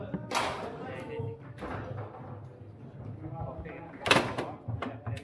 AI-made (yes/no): no